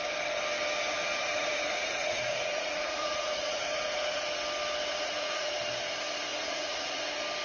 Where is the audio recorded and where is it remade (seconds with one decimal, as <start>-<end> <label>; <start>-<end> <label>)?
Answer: 0.0-1.2 recorded; 1.2-4.2 remade; 4.2-4.9 recorded; 4.9-5.5 remade; 5.5-6.3 recorded; 6.3-7.0 remade; 7.0-7.4 recorded